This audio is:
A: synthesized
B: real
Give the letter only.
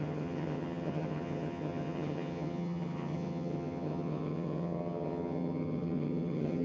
A